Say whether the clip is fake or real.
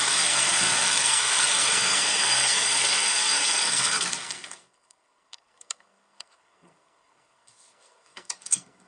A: fake